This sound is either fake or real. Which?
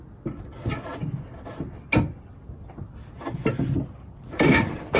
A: real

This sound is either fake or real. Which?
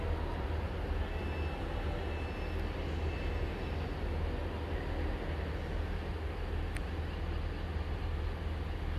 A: real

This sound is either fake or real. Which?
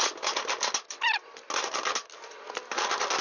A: real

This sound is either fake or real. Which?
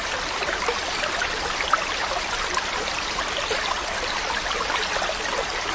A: real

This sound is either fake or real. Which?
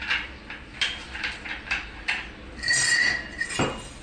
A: real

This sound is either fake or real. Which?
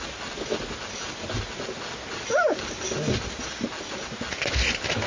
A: real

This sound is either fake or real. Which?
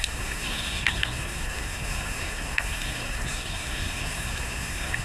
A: fake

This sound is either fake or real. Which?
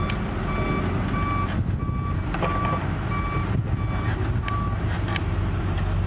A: real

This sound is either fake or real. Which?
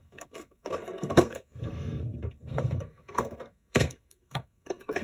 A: fake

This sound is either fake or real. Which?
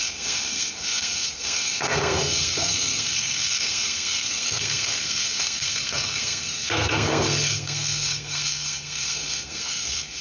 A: fake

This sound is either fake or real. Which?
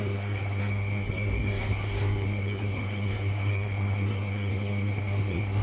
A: fake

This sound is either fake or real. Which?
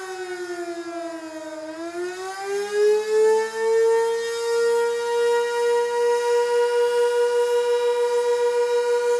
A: real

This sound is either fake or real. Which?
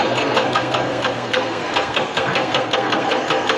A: fake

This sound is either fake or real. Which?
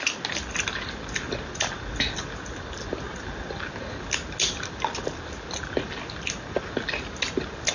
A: real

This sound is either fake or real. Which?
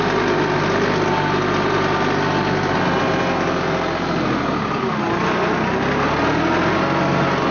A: real